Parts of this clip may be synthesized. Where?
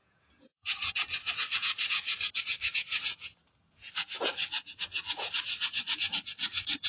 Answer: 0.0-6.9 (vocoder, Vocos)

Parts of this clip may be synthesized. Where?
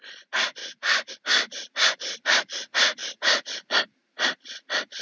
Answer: 0.6-1.1 (vocoder, BigVGAN v2); 3.0-3.8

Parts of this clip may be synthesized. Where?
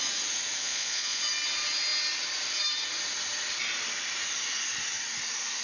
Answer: 0.6-1.2 (vocoder, Vocos)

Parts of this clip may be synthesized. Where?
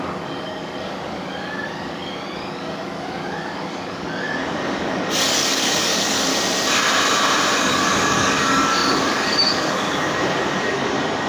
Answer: 0.0-6.3 (codec, DAC); 7.6-11.3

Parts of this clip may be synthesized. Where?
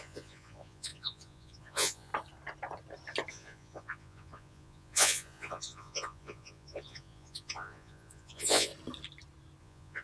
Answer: 0.0-2.1 (vocoder, Vocos); 3.3-8.7; 9.6-10.0